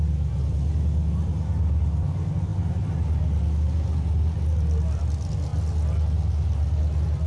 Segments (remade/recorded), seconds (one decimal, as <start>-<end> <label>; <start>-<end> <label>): 0.0-7.3 recorded